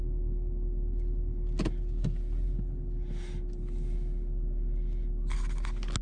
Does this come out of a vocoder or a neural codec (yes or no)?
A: no